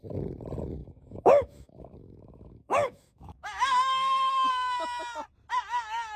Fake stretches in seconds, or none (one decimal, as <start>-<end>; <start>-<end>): 0.8-4.5